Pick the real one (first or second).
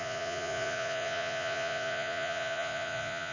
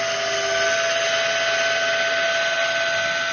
second